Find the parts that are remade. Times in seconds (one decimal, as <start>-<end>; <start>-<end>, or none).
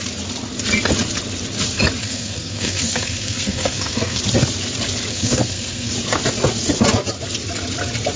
2.0-4.2; 5.1-5.9